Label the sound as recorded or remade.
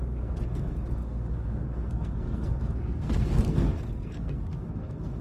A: remade